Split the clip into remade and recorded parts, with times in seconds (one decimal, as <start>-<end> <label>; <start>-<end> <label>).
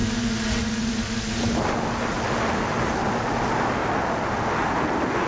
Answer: 0.0-5.3 recorded